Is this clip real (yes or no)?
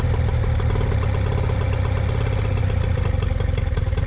yes